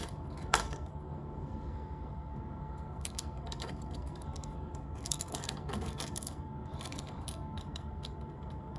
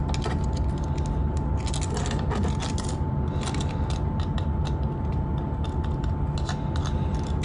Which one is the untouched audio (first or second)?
second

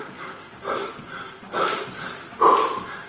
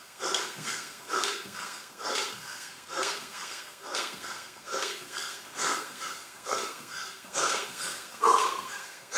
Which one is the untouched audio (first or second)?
first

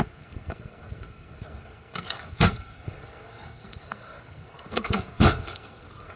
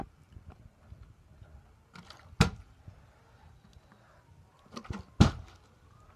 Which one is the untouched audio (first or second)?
second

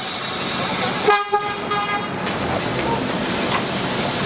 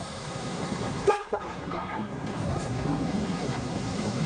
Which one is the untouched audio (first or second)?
first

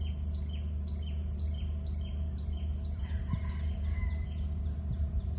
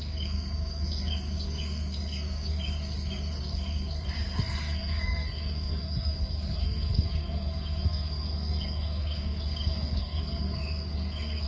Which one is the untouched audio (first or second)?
first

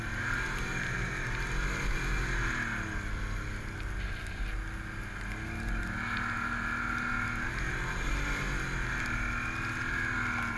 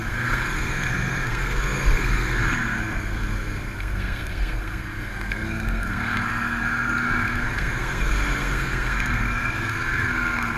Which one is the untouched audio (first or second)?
first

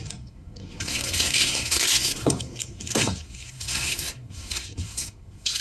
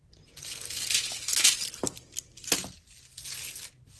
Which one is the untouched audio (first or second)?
second